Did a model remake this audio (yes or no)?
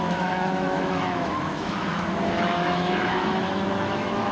yes